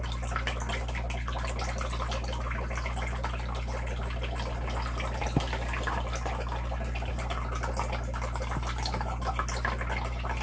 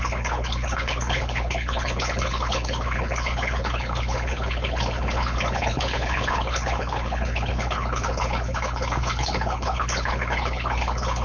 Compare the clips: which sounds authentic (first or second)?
first